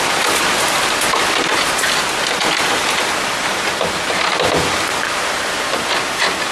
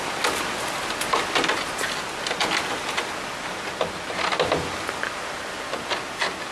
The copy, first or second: first